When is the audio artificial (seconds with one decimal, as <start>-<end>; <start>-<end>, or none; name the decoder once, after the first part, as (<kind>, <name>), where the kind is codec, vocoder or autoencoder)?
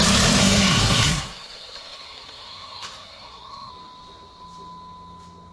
0.4-3.7 (codec, SNAC)